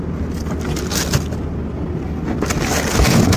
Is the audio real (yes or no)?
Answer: yes